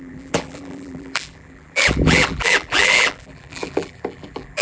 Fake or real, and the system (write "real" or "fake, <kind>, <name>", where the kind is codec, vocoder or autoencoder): fake, vocoder, BigVGAN v2